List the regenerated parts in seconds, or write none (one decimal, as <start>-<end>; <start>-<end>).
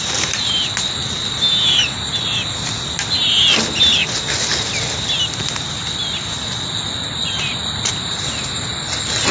none